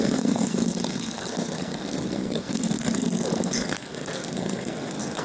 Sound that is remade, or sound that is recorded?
remade